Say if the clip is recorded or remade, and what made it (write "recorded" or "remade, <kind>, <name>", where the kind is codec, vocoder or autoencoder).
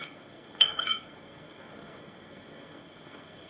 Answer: remade, codec, SNAC